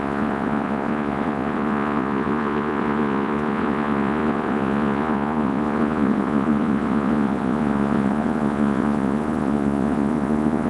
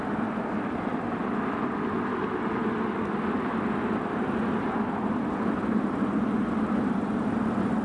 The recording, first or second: second